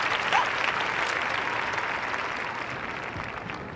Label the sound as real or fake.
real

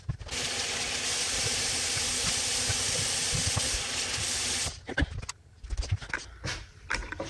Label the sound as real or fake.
real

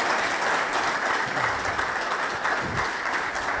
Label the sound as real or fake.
real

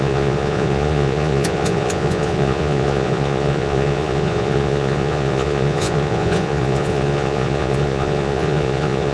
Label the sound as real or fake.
fake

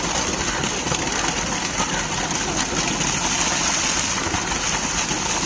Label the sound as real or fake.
real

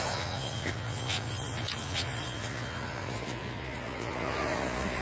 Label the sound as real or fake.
fake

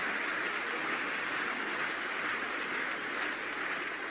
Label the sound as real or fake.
real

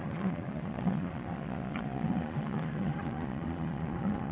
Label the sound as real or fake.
fake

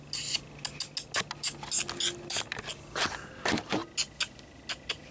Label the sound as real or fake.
real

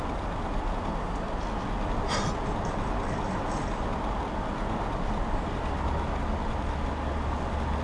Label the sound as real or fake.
real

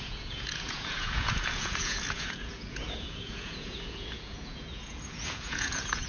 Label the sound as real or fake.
fake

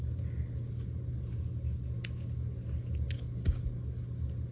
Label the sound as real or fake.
real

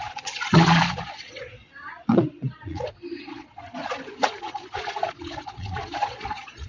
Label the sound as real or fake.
fake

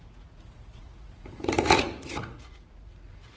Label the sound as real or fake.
fake